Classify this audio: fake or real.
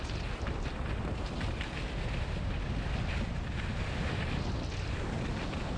real